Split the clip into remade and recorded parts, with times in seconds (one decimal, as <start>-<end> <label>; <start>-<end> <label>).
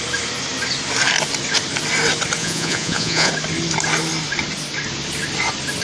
0.0-2.4 recorded; 2.4-3.3 remade; 3.3-5.8 recorded